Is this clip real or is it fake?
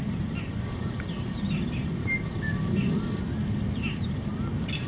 real